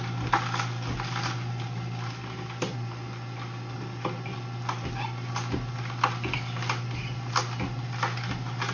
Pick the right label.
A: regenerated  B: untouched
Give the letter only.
B